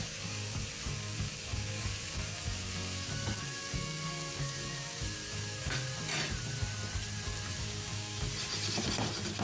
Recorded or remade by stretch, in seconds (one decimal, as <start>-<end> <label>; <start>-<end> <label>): 0.0-5.8 remade; 5.8-7.6 recorded; 7.6-8.3 remade; 8.3-9.4 recorded